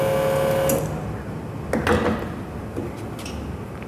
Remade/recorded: recorded